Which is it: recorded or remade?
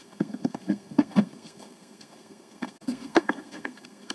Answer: remade